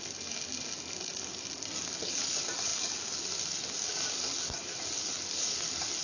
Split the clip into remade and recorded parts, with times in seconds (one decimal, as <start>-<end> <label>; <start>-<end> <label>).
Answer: 0.0-6.0 recorded